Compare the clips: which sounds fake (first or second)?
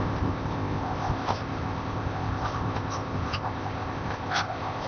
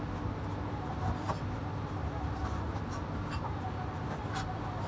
first